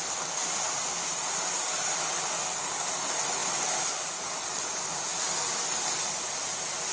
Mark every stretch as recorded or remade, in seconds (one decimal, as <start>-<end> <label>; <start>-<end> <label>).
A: 0.0-6.9 recorded